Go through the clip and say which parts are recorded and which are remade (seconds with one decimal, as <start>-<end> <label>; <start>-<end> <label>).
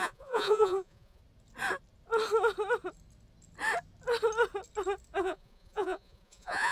0.0-1.2 remade; 1.2-5.2 recorded; 5.2-6.7 remade